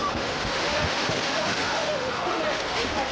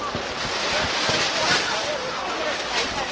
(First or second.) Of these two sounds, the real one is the second